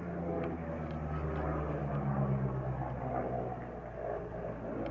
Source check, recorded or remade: recorded